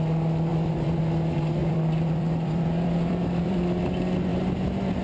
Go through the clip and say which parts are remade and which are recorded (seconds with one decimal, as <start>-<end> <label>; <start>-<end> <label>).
0.0-0.5 recorded; 0.5-1.0 remade; 1.0-1.6 recorded; 1.6-3.8 remade; 3.8-4.3 recorded; 4.3-5.0 remade

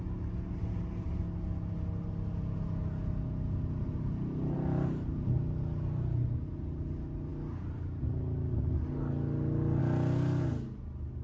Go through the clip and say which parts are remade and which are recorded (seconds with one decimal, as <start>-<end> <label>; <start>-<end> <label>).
0.0-3.8 recorded; 3.8-5.3 remade; 5.3-11.2 recorded